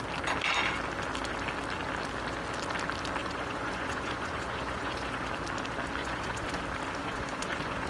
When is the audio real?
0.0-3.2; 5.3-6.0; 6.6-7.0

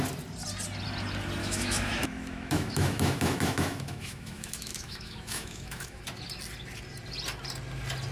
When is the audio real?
0.0-1.4; 6.0-8.1

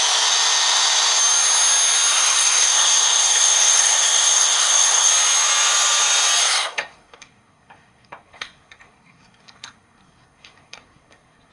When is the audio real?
0.0-2.1; 5.1-6.4

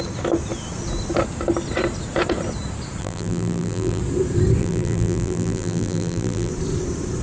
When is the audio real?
0.0-3.0; 4.0-4.6; 6.5-7.2

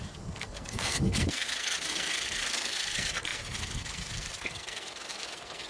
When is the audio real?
none

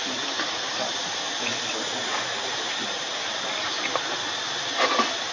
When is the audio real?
0.0-5.3